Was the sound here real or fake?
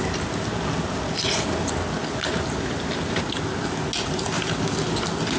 real